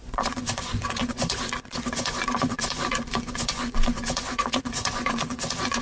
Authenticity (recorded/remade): remade